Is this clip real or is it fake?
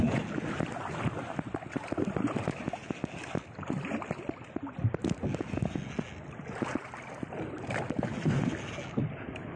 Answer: real